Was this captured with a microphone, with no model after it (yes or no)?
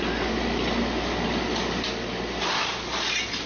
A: yes